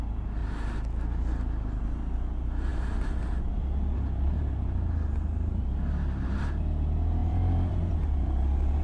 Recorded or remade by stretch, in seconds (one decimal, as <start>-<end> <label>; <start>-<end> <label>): 0.0-2.7 recorded; 2.7-3.6 remade; 3.6-7.2 recorded; 7.2-8.3 remade; 8.3-8.8 recorded